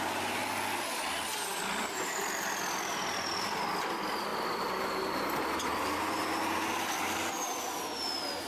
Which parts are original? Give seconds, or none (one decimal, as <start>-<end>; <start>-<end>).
0.0-8.5